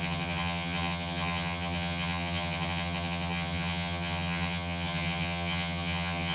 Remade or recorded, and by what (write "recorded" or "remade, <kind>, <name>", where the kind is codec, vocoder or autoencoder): remade, vocoder, HiFi-GAN